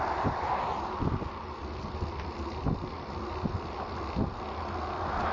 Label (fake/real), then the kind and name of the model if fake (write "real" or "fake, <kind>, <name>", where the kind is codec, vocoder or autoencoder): real